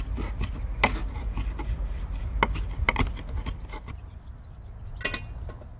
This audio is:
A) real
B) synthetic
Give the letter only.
A